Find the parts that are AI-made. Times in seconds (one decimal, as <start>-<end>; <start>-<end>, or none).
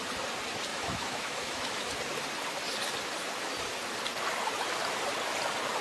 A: 0.7-1.9